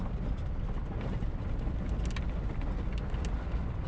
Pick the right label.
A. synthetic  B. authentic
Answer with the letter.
B